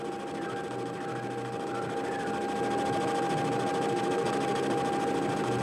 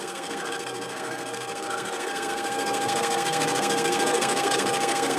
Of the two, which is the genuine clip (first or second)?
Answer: first